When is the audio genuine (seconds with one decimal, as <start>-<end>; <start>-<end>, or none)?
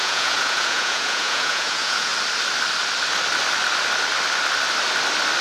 2.1-5.4